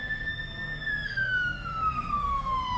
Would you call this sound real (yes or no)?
no